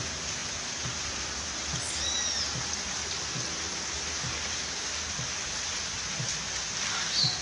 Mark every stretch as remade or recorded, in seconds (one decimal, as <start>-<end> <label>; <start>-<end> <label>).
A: 0.0-7.4 recorded